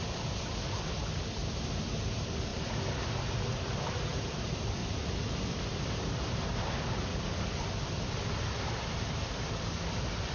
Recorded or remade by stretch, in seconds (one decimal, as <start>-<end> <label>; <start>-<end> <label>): 0.0-1.4 remade; 1.4-2.1 recorded; 2.1-2.5 remade; 2.5-3.3 recorded; 3.3-4.8 remade; 4.8-5.6 recorded; 5.6-7.1 remade; 7.1-9.3 recorded; 9.3-10.3 remade